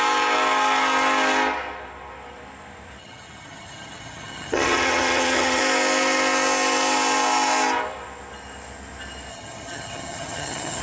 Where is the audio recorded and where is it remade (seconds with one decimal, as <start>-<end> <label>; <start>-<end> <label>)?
0.0-3.0 recorded; 3.0-5.6 remade; 5.6-9.3 recorded; 9.3-10.8 remade